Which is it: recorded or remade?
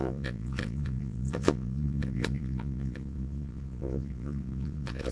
remade